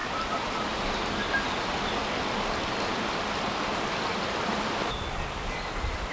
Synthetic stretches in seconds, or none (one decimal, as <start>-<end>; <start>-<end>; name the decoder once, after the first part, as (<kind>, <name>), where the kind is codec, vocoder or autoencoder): none